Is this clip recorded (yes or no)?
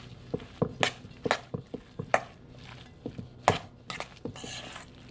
yes